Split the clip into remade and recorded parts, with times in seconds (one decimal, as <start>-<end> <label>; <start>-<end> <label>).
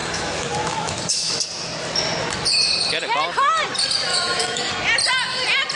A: 0.0-1.3 remade; 1.3-4.1 recorded; 4.1-4.7 remade; 4.7-5.7 recorded